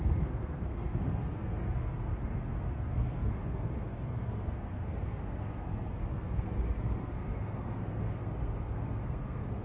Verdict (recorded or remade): remade